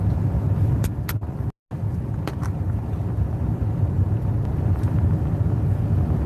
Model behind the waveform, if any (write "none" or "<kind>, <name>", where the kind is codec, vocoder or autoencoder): none